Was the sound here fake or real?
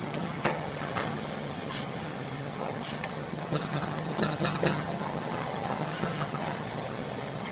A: fake